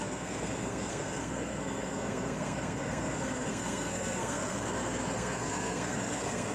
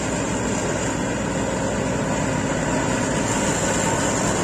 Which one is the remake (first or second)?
first